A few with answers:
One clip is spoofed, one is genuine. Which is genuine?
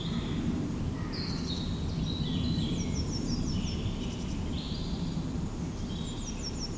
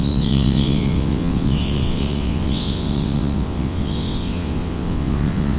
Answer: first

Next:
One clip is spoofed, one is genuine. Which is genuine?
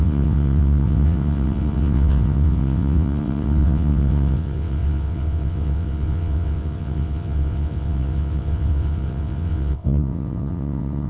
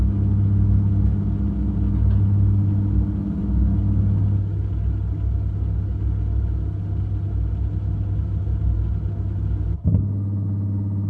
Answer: second